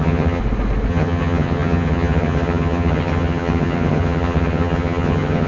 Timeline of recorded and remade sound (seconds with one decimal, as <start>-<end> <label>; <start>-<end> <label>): 0.0-0.4 remade; 0.4-0.9 recorded; 0.9-5.5 remade